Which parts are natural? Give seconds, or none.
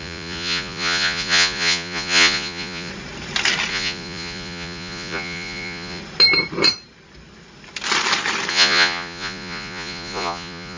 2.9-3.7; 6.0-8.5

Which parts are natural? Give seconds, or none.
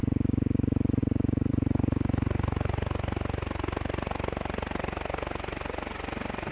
0.0-6.5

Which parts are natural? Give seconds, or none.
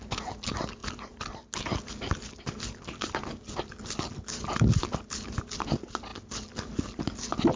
0.0-7.6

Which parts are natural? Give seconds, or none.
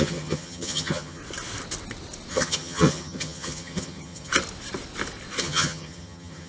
1.2-2.3; 4.3-5.4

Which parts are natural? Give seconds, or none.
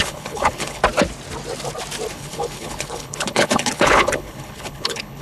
0.8-2.1